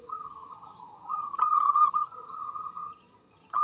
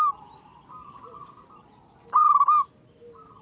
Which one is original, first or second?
second